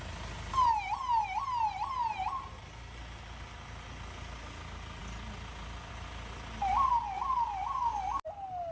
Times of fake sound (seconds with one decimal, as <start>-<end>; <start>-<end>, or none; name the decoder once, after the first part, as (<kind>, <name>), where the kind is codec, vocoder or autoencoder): none